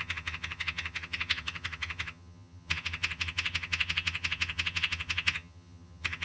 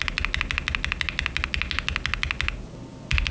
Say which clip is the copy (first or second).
first